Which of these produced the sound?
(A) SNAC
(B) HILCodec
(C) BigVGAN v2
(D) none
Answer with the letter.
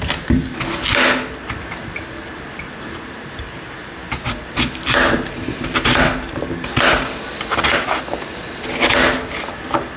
D